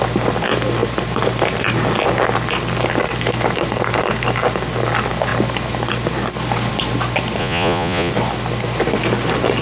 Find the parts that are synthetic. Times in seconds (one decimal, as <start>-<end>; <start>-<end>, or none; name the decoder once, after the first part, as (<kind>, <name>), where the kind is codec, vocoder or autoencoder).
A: 7.4-8.1 (vocoder, Vocos)

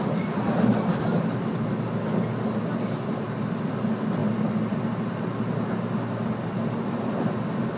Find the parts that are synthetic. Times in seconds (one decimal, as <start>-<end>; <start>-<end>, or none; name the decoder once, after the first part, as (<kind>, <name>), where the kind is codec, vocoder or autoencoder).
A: none